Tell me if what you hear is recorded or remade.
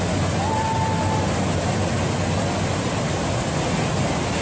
recorded